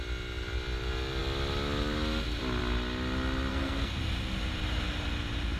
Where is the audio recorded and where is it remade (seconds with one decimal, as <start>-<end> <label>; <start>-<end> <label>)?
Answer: 0.0-3.5 recorded; 3.5-4.0 remade; 4.0-5.6 recorded